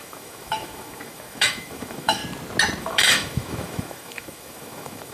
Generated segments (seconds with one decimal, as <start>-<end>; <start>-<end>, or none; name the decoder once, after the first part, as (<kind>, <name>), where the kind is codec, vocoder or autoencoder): 0.0-2.2 (autoencoder, DAC-VAE); 2.8-5.1